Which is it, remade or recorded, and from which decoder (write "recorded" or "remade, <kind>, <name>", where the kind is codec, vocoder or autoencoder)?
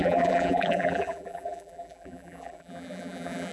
remade, vocoder, BigVGAN v2